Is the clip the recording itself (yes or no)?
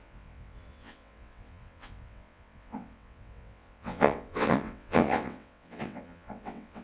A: no